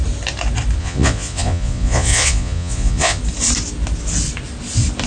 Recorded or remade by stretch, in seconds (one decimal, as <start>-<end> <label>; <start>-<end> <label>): 0.0-0.8 recorded; 0.8-3.2 remade; 3.2-5.1 recorded